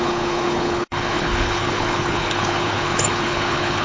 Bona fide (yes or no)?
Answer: no